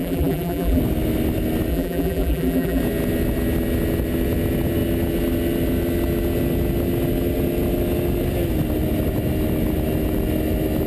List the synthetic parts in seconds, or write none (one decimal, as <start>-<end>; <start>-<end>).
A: 0.0-0.8; 1.7-2.8